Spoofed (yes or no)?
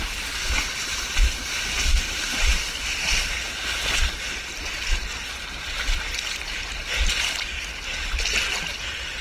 no